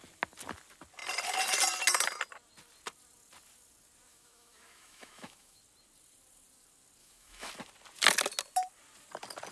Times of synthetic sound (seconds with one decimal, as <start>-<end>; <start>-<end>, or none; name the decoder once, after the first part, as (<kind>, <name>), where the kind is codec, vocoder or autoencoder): 4.1-5.6 (autoencoder, DAC-VAE); 7.0-7.5